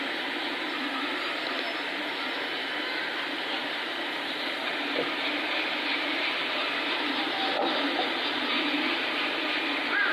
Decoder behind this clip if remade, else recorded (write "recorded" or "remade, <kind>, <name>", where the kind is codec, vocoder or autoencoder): remade, vocoder, BigVGAN v2